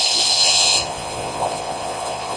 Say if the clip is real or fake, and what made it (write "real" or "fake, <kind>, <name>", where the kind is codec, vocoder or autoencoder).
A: fake, vocoder, Vocos